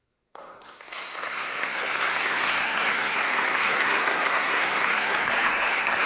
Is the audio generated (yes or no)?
yes